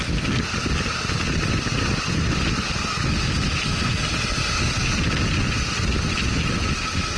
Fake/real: real